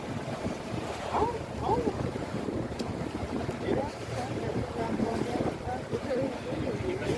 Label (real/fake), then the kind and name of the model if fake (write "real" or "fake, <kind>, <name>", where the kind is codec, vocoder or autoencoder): fake, vocoder, BigVGAN v2